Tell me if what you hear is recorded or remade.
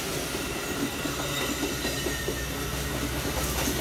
recorded